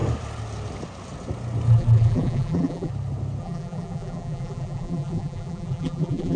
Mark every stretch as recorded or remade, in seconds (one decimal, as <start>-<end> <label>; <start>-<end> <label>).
0.0-1.7 recorded; 1.7-2.9 remade; 2.9-3.4 recorded; 3.4-6.4 remade